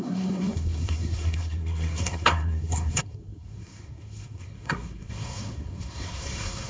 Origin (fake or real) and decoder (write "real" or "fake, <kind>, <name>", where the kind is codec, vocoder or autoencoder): fake, codec, SNAC